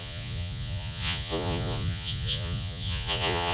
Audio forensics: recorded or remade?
remade